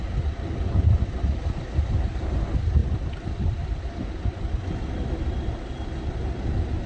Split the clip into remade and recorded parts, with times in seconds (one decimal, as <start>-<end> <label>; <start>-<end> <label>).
0.0-6.9 recorded